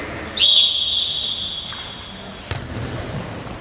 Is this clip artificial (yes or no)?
no